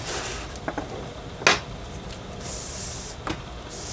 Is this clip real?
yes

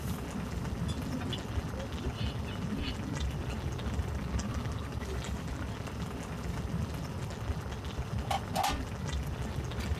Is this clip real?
yes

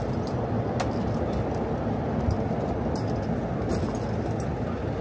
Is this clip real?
yes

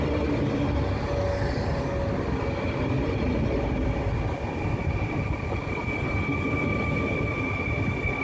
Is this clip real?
yes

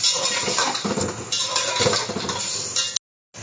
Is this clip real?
yes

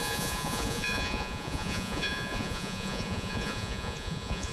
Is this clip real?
no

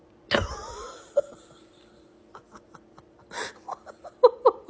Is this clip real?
yes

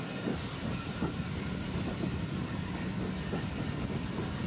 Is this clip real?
yes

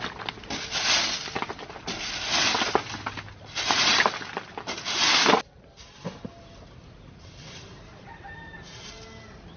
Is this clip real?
yes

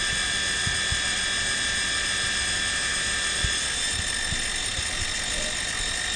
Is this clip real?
yes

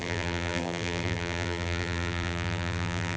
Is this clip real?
no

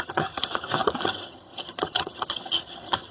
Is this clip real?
no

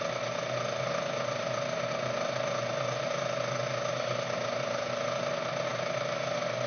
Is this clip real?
yes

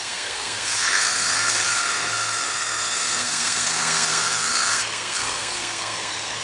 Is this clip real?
no